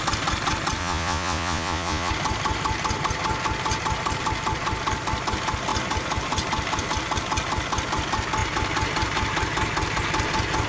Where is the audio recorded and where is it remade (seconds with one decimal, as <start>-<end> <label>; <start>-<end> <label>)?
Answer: 0.0-0.8 recorded; 0.8-2.1 remade; 2.1-10.7 recorded